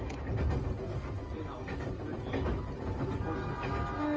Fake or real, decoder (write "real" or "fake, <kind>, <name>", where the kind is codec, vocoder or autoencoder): real